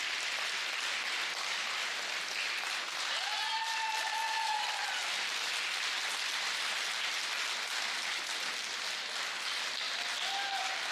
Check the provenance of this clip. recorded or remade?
recorded